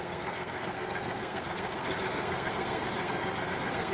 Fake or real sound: fake